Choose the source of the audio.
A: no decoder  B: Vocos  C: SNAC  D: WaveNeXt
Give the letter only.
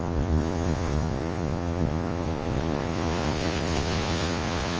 B